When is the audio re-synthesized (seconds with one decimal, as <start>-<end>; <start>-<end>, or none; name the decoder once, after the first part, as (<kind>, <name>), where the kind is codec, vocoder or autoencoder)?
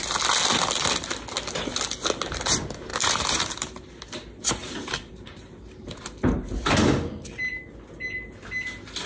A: 2.9-4.0 (vocoder, BigVGAN v2); 4.6-5.8